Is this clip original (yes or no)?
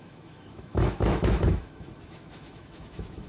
no